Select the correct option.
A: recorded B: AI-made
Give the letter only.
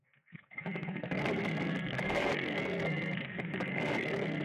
B